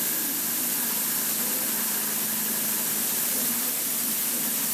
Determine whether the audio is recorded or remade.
recorded